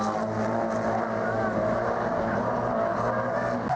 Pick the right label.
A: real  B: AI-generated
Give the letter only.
A